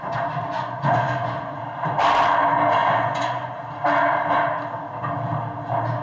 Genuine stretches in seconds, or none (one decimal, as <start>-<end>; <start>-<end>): 0.0-0.5; 1.6-2.8; 3.6-6.0